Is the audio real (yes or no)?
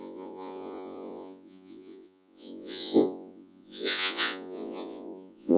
no